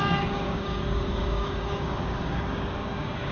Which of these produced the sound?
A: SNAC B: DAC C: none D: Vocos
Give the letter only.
B